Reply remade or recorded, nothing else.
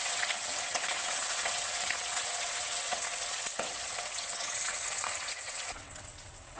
remade